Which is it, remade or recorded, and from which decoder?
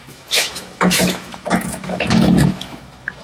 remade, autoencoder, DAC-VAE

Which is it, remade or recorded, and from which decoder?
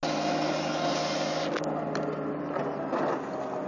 recorded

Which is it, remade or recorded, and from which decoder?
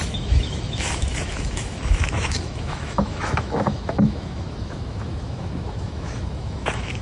remade, autoencoder, DAC-VAE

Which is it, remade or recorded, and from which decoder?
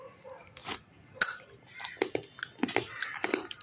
recorded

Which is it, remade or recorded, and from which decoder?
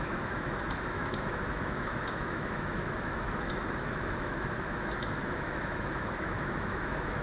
remade, autoencoder, DAC-VAE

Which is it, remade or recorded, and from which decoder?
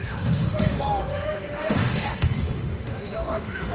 remade, autoencoder, DAC-VAE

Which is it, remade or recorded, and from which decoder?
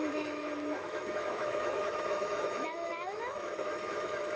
remade, autoencoder, DAC-VAE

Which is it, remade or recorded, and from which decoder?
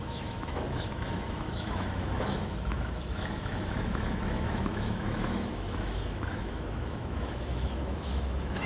remade, autoencoder, DAC-VAE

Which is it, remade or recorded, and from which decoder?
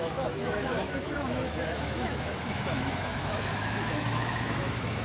remade, autoencoder, DAC-VAE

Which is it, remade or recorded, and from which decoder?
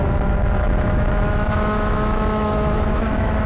remade, autoencoder, DAC-VAE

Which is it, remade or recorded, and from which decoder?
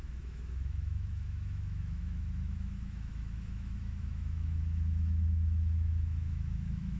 remade, autoencoder, DAC-VAE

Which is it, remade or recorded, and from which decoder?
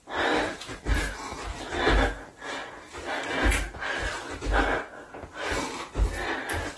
recorded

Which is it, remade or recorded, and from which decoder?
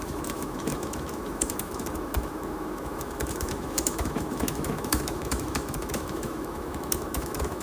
remade, autoencoder, DAC-VAE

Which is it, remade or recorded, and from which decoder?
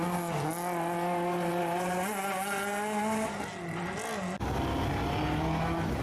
recorded